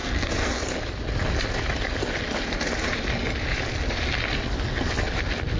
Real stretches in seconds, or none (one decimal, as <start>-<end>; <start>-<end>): 0.6-5.6